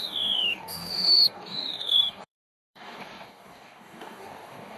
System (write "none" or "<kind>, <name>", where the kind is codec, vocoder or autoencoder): codec, DAC